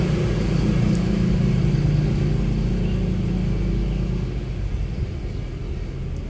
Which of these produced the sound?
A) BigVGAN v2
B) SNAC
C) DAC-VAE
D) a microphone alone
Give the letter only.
D